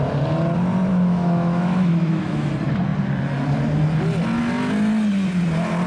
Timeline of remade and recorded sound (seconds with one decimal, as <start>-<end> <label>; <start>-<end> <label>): 0.0-0.9 recorded; 0.9-2.5 remade; 2.5-5.9 recorded